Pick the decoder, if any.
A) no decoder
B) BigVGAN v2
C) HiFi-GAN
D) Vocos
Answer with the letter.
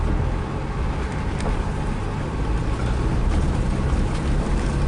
A